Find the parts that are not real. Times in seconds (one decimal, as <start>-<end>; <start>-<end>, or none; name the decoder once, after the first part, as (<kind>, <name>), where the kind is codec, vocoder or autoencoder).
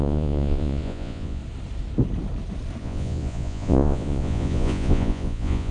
0.0-1.4 (vocoder, Vocos); 2.8-5.7